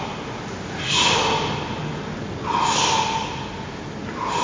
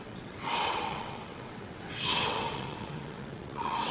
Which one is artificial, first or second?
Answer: second